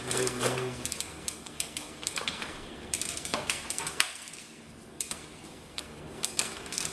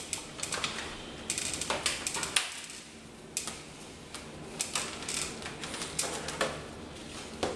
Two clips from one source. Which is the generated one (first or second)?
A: first